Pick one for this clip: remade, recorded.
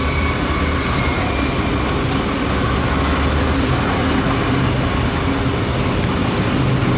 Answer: recorded